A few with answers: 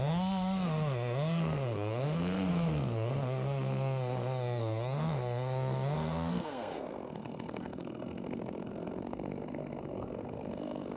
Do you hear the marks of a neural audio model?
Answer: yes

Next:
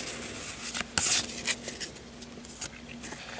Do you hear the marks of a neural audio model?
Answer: no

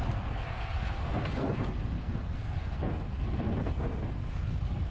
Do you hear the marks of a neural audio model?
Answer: yes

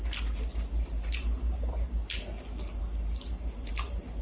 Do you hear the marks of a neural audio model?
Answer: no